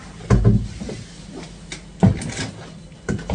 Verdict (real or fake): real